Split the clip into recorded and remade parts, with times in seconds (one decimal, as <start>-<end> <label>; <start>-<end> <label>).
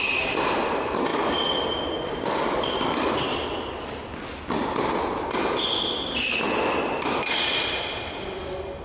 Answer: 0.0-8.8 recorded